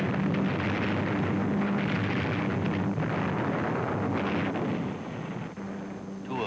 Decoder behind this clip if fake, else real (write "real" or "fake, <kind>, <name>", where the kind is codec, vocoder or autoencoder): real